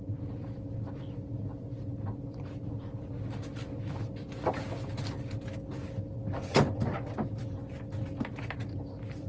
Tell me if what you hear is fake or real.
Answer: real